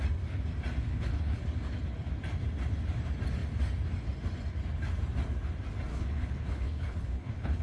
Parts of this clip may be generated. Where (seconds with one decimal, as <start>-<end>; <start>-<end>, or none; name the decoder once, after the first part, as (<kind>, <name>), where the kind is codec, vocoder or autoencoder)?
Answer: 0.9-1.4 (codec, HILCodec); 5.9-7.6